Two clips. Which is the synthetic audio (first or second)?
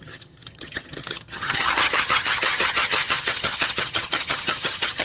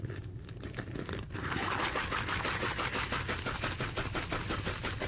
first